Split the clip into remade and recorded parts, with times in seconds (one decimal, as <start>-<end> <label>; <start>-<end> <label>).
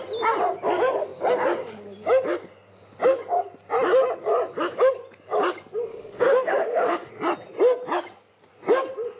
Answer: 0.0-5.9 recorded; 5.9-7.1 remade; 7.1-9.2 recorded